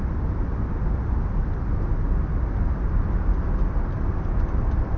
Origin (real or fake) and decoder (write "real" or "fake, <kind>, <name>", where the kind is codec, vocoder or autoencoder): real